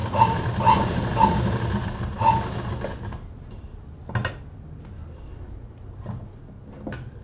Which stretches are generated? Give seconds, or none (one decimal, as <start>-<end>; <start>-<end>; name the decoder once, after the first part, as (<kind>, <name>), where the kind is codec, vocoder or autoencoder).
none